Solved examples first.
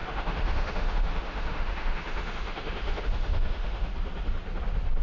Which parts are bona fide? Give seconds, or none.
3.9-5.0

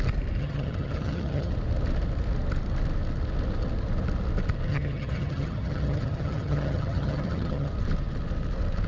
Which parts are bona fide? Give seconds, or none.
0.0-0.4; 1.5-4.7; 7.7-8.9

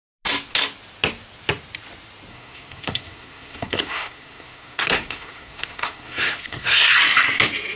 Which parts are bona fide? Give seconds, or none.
0.0-2.3; 6.9-7.8

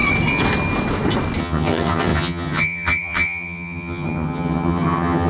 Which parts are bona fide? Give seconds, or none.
0.0-1.4

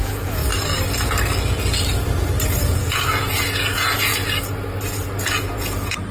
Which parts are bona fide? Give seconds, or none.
0.4-2.8; 4.1-5.2